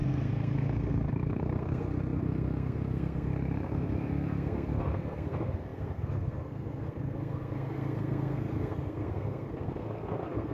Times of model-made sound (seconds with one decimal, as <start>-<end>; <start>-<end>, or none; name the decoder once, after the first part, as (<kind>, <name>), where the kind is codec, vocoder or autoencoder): 0.0-10.5 (codec, SNAC)